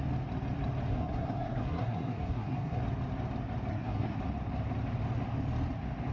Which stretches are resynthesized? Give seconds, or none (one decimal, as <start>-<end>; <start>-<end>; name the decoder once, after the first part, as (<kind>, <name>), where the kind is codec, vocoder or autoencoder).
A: 0.9-2.8 (codec, SNAC); 3.7-4.2